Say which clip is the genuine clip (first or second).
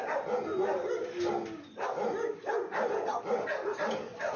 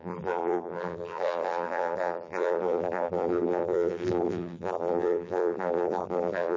first